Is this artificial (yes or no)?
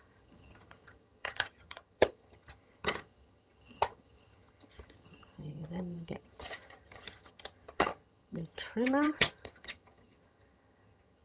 yes